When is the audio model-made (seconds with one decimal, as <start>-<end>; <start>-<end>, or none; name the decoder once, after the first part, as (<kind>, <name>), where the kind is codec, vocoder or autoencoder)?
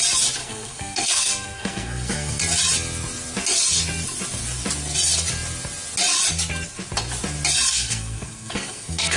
0.4-2.4 (codec, SNAC); 7.7-9.2